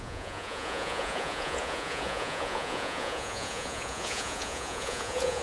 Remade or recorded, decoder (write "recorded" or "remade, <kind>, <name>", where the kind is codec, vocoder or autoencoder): remade, vocoder, Vocos